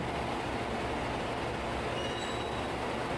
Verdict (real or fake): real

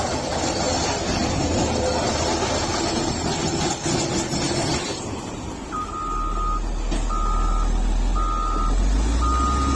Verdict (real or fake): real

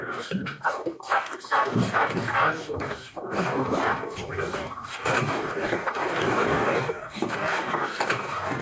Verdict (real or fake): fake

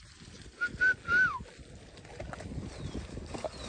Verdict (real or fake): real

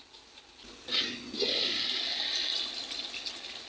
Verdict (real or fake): real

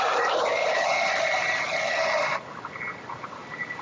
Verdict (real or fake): real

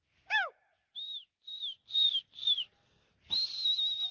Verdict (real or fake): real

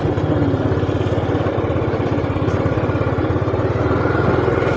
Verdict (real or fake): real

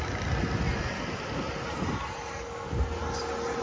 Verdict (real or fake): real